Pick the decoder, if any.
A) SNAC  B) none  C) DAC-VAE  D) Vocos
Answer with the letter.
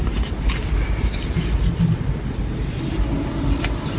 B